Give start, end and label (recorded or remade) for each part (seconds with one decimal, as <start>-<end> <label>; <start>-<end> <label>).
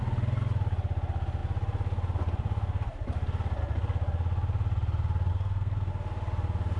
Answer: 0.0-5.3 recorded; 5.3-5.9 remade; 5.9-6.8 recorded